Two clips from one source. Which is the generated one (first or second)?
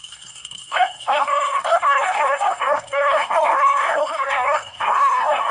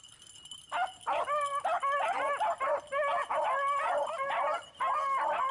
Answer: first